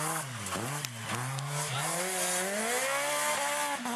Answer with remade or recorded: recorded